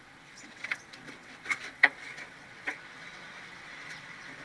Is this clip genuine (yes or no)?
no